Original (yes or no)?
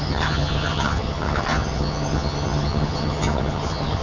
no